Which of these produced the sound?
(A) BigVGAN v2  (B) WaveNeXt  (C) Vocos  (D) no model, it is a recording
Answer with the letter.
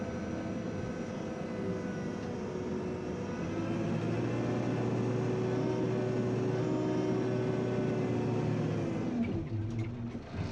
D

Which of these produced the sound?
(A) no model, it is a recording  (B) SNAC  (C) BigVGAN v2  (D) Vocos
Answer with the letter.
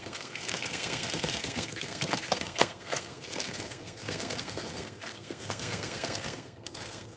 B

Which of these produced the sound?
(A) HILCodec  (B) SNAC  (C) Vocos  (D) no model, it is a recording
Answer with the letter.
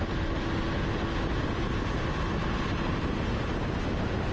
D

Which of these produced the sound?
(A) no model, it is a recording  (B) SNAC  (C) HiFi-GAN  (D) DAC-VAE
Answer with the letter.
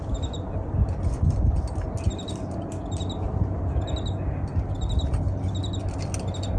A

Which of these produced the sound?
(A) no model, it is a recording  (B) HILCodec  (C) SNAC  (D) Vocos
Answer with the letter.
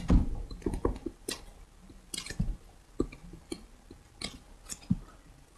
A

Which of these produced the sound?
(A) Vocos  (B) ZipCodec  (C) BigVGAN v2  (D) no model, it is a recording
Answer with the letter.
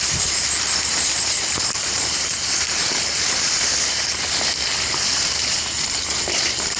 C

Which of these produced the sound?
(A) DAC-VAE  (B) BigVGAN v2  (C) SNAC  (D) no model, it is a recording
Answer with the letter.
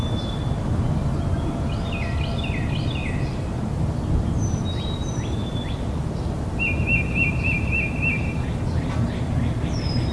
D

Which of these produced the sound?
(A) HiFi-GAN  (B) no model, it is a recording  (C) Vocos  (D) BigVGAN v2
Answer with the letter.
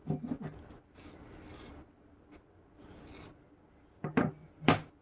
B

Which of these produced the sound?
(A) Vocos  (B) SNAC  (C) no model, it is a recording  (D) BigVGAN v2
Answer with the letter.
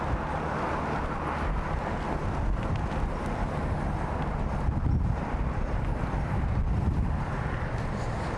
C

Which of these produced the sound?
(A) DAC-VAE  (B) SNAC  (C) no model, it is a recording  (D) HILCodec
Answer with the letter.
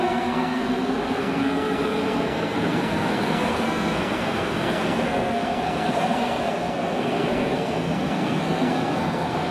B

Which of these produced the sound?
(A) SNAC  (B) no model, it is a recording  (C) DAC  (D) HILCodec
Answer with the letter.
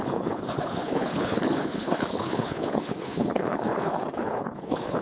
D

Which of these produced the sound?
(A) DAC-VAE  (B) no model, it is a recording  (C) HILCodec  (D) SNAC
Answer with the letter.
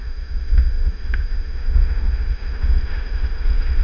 A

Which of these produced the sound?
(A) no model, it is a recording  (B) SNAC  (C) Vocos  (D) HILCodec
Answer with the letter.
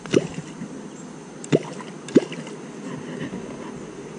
A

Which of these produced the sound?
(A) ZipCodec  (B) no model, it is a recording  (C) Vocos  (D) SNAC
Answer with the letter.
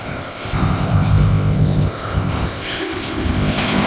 A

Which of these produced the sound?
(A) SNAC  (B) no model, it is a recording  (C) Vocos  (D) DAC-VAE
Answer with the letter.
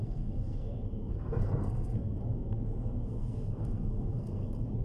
A